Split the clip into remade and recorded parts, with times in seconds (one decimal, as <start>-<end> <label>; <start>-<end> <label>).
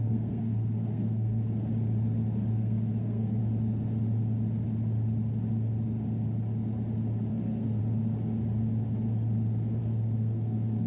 0.0-1.4 remade; 1.4-2.5 recorded; 2.5-3.4 remade; 3.4-7.3 recorded; 7.3-7.8 remade; 7.8-9.8 recorded; 9.8-10.9 remade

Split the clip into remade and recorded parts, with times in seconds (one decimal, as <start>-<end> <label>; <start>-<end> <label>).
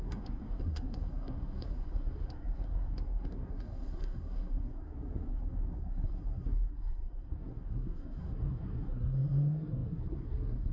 0.0-10.7 remade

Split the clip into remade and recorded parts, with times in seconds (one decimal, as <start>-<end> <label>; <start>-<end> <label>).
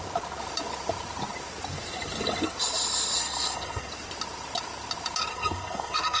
0.0-3.2 recorded; 3.2-3.9 remade; 3.9-5.3 recorded; 5.3-6.2 remade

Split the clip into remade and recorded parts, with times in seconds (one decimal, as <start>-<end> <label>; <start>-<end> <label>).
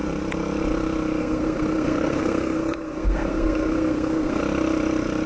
0.0-1.2 recorded; 1.2-4.4 remade; 4.4-5.3 recorded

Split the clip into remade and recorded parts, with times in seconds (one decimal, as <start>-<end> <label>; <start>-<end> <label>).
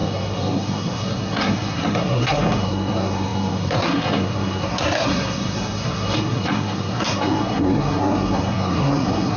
0.0-9.4 remade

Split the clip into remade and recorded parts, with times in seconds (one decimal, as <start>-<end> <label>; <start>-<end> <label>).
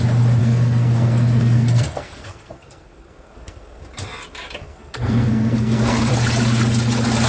0.0-0.4 recorded; 0.4-3.8 remade; 3.8-4.6 recorded; 4.6-6.1 remade; 6.1-7.3 recorded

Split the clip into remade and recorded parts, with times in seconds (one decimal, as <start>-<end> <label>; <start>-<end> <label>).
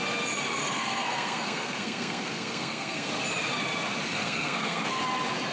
0.0-0.6 recorded; 0.6-3.1 remade; 3.1-4.1 recorded; 4.1-5.0 remade; 5.0-5.5 recorded